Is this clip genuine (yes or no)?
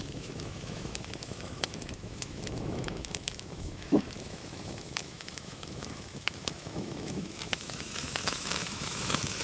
no